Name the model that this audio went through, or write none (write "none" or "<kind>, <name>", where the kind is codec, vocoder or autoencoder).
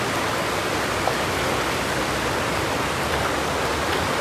none